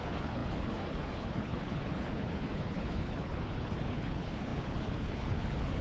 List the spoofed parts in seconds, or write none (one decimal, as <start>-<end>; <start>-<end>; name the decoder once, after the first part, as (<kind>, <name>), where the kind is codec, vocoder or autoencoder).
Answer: 0.0-5.8 (codec, HILCodec)